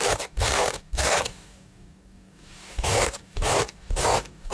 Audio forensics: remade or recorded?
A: remade